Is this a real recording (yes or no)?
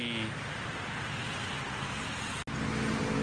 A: yes